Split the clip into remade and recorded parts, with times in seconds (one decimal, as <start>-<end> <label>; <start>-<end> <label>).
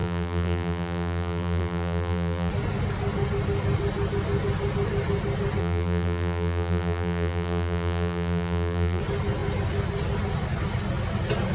0.0-2.5 remade; 2.5-5.6 recorded; 5.6-9.0 remade; 9.0-11.5 recorded